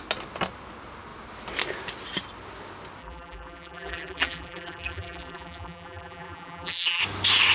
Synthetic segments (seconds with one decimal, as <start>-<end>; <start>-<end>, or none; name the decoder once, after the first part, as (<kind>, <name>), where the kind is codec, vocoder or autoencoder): 3.0-7.0 (vocoder, BigVGAN v2)